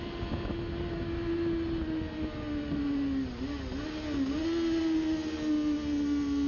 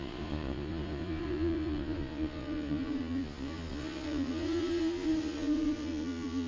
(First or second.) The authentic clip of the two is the first